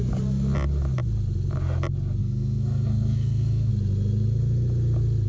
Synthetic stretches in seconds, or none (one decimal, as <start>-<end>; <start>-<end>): 2.2-3.7